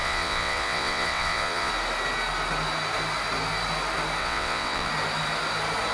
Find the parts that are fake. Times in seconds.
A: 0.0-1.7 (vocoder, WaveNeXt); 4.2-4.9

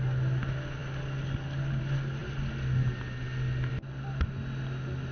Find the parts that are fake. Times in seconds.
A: none

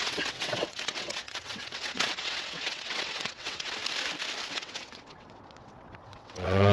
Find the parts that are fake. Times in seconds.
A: 0.0-3.8 (vocoder, WaveNeXt); 4.5-6.7

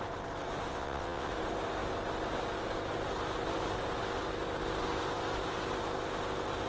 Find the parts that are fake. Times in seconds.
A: 0.7-1.3 (vocoder, WaveNeXt)

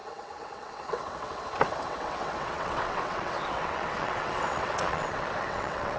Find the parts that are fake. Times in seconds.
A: 0.0-6.0 (vocoder, WaveNeXt)

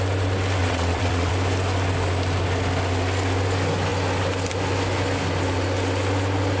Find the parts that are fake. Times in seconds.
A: 0.6-1.3 (vocoder, WaveNeXt)